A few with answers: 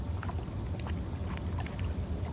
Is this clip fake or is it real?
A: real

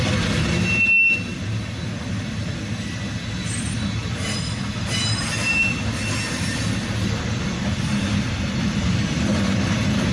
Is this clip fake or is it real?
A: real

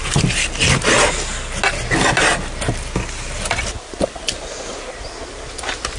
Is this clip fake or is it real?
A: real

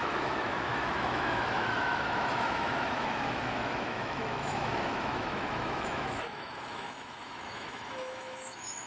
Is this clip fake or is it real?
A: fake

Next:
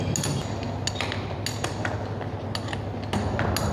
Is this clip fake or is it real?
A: real